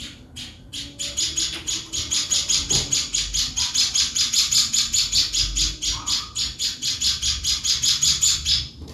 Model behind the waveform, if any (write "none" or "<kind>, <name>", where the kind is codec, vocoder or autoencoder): none